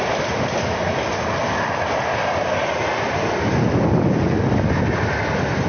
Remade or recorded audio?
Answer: recorded